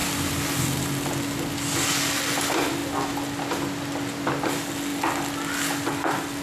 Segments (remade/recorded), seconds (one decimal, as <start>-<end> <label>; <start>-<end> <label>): 0.0-6.4 recorded